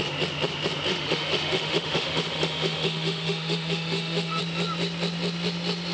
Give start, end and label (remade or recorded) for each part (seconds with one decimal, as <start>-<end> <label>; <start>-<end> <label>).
0.0-0.9 recorded; 0.9-4.4 remade; 4.4-5.9 recorded